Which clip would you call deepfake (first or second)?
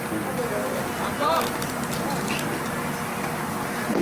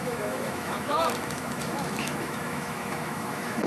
second